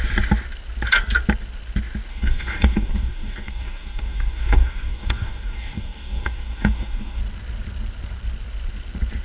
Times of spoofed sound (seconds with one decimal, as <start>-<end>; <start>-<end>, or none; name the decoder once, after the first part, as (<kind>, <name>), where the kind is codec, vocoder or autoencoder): 2.1-7.2 (codec, DAC)